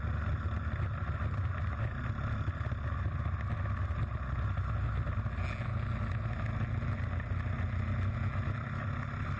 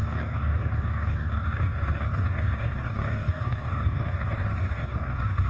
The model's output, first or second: second